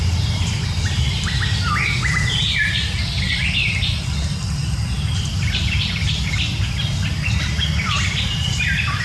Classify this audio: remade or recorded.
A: remade